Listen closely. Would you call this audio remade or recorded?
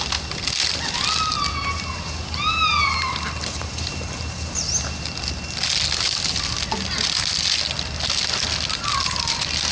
recorded